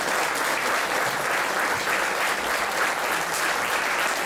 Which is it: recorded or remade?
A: recorded